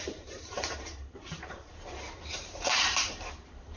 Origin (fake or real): fake